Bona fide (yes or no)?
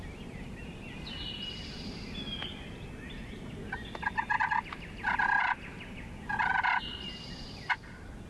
yes